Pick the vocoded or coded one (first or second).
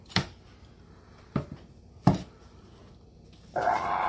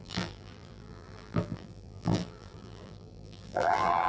second